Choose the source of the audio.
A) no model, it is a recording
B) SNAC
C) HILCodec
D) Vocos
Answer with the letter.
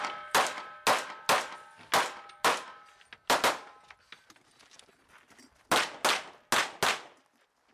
A